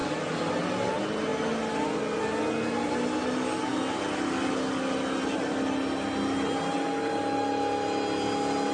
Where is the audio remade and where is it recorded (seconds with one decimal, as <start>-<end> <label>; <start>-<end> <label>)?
0.0-8.7 recorded